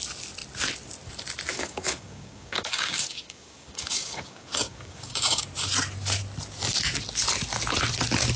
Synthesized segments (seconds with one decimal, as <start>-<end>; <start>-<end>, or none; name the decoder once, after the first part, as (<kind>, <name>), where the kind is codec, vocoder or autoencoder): 1.5-5.4 (codec, DAC)